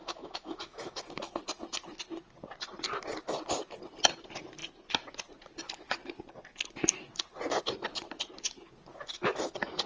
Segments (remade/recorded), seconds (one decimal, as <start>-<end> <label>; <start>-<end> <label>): 0.0-1.4 remade; 1.4-8.9 recorded; 8.9-9.5 remade; 9.5-9.9 recorded

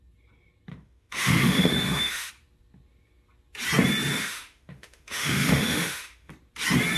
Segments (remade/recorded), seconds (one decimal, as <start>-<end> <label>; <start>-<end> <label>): 0.0-0.7 recorded; 0.7-2.3 remade; 2.3-4.1 recorded; 4.1-6.3 remade; 6.3-7.0 recorded